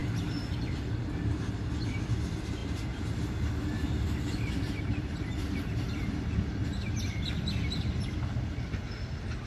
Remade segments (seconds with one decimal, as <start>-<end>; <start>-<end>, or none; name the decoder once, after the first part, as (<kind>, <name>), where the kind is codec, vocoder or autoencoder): none